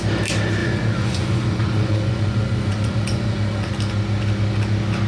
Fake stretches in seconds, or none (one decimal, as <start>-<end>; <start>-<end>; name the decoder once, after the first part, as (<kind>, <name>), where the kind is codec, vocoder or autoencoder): 0.6-3.7 (vocoder, Vocos)